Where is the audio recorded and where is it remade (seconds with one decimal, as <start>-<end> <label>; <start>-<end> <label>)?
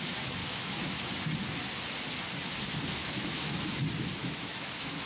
0.0-0.4 recorded; 0.4-1.1 remade; 1.1-3.0 recorded; 3.0-3.6 remade; 3.6-4.2 recorded; 4.2-5.1 remade